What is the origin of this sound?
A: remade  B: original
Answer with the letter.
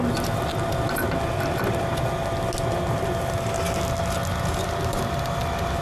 B